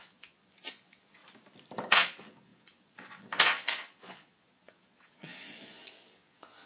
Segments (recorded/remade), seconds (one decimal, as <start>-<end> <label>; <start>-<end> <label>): 0.0-1.2 remade; 1.2-1.9 recorded; 1.9-6.7 remade